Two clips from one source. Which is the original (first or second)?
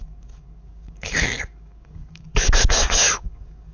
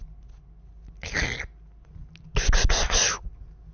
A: second